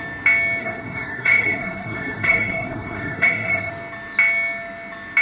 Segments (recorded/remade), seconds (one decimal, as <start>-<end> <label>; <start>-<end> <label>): 0.0-0.6 recorded; 0.6-3.7 remade; 3.7-5.2 recorded